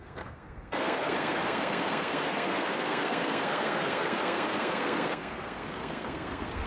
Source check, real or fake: fake